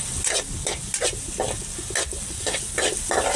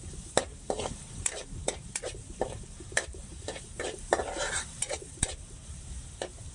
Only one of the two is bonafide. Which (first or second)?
first